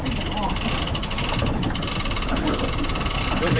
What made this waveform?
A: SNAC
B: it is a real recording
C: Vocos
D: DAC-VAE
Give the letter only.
B